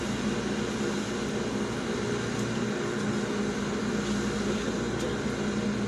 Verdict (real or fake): real